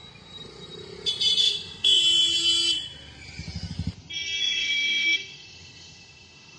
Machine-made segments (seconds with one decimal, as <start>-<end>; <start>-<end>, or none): 1.4-2.0; 4.4-6.6